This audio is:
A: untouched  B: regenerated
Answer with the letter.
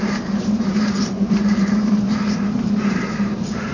B